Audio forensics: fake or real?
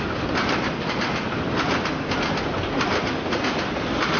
real